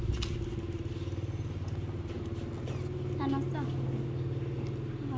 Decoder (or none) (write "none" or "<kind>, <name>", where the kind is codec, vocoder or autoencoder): none